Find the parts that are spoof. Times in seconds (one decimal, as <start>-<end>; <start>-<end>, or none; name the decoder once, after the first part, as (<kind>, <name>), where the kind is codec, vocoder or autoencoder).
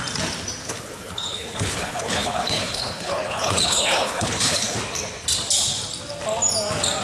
0.6-4.8 (codec, HILCodec)